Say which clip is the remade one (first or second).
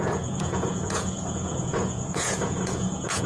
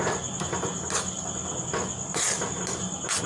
first